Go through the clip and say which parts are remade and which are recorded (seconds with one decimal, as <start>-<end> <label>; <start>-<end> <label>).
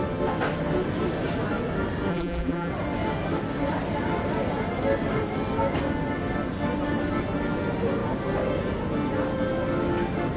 0.0-2.1 recorded; 2.1-2.7 remade; 2.7-10.4 recorded